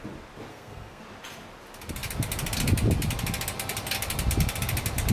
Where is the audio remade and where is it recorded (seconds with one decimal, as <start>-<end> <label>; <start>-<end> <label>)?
0.0-0.5 recorded; 0.5-1.0 remade; 1.0-5.1 recorded